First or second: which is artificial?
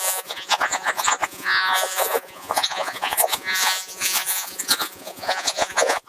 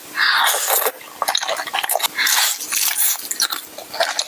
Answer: first